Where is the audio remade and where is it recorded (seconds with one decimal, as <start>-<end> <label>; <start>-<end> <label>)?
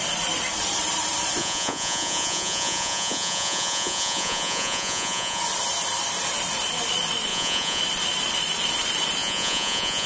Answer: 0.0-1.4 recorded; 1.4-5.4 remade; 5.4-7.3 recorded; 7.3-7.8 remade; 7.8-9.2 recorded; 9.2-10.1 remade